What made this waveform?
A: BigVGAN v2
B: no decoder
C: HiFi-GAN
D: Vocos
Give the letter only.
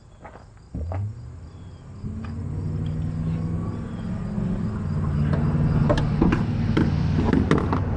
B